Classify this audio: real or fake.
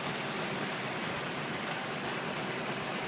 real